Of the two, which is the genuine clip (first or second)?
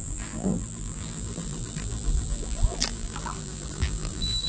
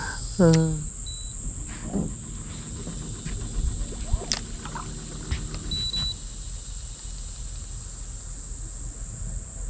second